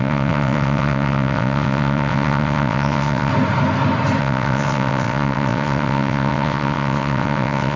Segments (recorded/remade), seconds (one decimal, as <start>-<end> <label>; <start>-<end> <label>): 0.0-3.3 remade; 3.3-4.2 recorded; 4.2-7.8 remade

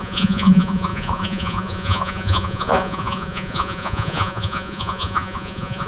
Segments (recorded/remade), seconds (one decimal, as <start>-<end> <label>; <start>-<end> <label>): 0.0-5.9 remade

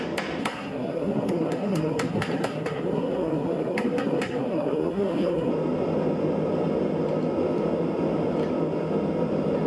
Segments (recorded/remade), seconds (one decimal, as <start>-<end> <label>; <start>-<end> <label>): 0.0-0.4 recorded; 0.4-5.5 remade; 5.5-9.7 recorded

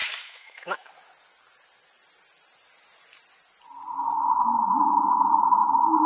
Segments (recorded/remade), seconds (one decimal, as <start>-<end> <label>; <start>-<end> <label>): 0.0-0.9 remade; 0.9-6.1 recorded

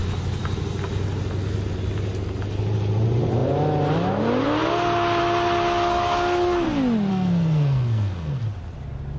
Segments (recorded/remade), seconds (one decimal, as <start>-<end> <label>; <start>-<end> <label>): 0.0-7.1 recorded; 7.1-8.4 remade; 8.4-9.2 recorded

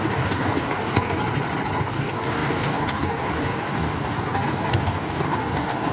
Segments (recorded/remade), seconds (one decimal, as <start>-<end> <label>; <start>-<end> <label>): 0.0-1.2 remade; 1.2-1.8 recorded; 1.8-5.9 remade

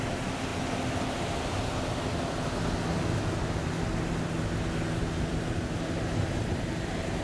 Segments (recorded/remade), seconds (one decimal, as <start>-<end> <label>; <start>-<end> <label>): 0.0-7.2 recorded